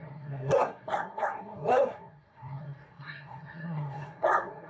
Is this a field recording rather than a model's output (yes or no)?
no